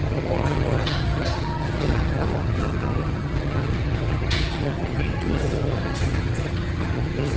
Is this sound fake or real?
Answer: fake